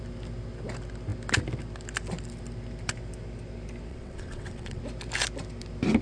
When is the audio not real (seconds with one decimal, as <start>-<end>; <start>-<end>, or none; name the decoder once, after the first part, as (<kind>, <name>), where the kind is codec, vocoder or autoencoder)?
3.9-4.8 (vocoder, WaveNeXt)